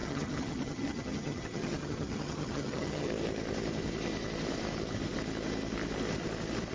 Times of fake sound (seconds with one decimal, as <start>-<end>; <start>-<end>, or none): 0.0-3.1

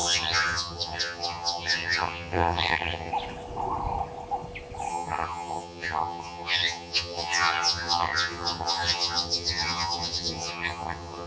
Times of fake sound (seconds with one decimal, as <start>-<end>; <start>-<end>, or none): 0.0-3.1; 4.9-11.3